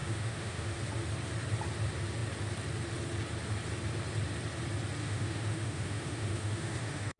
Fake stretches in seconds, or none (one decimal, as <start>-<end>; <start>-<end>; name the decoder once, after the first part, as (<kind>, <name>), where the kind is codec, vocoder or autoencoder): 0.0-0.8 (autoencoder, DAC-VAE); 5.0-7.2